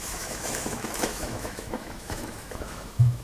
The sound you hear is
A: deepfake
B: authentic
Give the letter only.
A